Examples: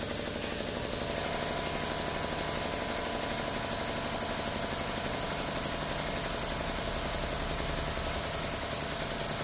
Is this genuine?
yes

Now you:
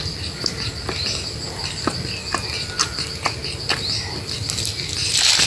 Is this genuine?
yes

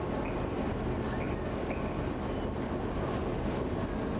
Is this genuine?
yes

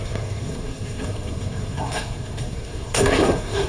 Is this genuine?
no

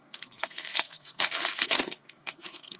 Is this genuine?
no